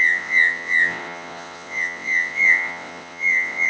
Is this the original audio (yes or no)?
no